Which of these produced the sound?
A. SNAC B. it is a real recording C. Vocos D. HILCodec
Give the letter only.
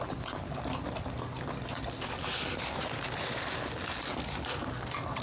B